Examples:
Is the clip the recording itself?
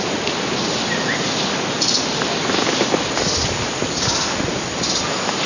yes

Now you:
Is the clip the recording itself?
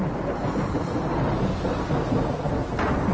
yes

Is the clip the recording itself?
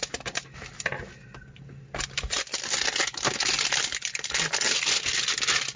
yes